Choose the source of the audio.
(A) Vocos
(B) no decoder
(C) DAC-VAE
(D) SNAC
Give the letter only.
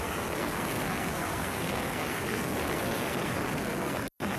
D